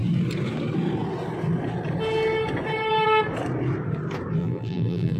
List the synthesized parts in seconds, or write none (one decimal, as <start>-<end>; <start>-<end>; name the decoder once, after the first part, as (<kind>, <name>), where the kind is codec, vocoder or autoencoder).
4.4-5.2 (vocoder, BigVGAN v2)